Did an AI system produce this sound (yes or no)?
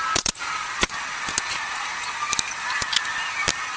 no